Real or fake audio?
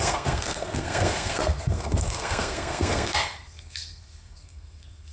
fake